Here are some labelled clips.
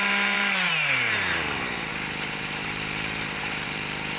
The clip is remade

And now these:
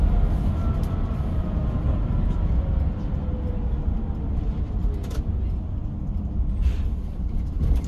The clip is recorded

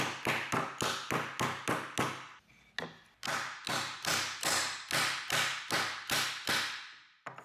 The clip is recorded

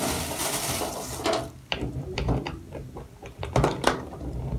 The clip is remade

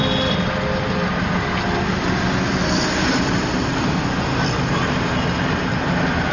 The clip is recorded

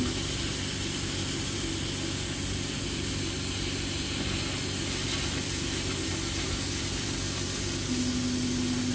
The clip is recorded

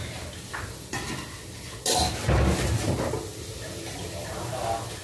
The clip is recorded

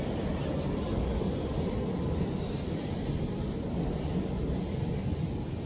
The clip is recorded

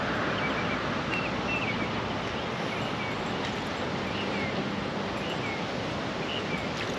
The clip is recorded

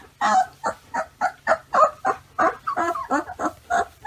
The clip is remade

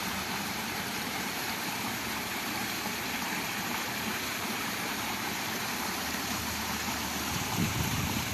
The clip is remade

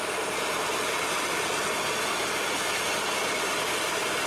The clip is recorded